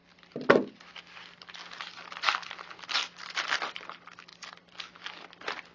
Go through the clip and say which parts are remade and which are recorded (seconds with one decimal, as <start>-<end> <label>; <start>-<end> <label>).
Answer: 0.0-5.7 recorded